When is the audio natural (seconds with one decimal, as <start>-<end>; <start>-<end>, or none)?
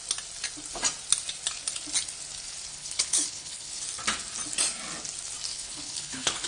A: 0.0-2.7; 3.8-5.5